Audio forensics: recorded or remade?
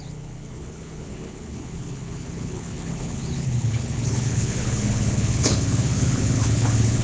remade